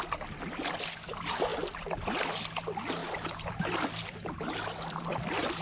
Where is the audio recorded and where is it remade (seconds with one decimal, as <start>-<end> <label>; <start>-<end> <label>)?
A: 0.0-3.0 recorded; 3.0-4.3 remade; 4.3-5.6 recorded